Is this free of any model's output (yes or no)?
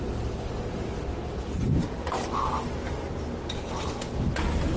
yes